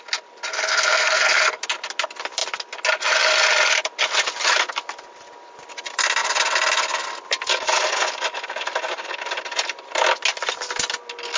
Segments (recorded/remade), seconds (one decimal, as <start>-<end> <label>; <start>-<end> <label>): 0.0-0.5 recorded; 0.5-1.6 remade; 1.6-11.4 recorded

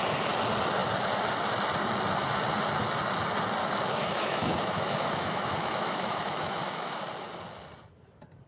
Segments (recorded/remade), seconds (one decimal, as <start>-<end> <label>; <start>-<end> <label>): 0.0-3.6 recorded; 3.6-7.0 remade; 7.0-8.5 recorded

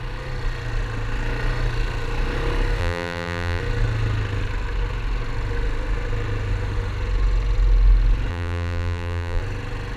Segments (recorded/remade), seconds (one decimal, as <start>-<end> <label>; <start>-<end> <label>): 0.0-2.8 recorded; 2.8-3.6 remade; 3.6-8.3 recorded; 8.3-9.4 remade; 9.4-10.0 recorded

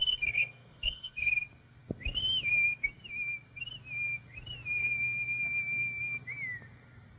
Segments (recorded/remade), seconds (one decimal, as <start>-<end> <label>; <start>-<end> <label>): 0.0-1.3 remade; 1.3-7.2 recorded

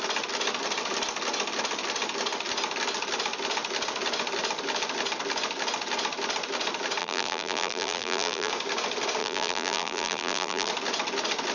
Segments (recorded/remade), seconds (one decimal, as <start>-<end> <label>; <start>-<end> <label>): 0.0-7.0 recorded; 7.0-8.5 remade; 8.5-9.2 recorded; 9.2-10.7 remade; 10.7-11.5 recorded

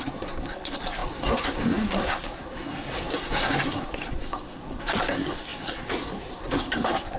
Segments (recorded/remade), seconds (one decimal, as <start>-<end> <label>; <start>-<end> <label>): 0.0-7.2 remade